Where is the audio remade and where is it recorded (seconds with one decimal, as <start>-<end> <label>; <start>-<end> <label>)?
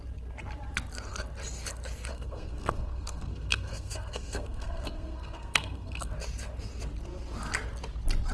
0.0-2.1 recorded; 2.1-6.1 remade; 6.1-8.3 recorded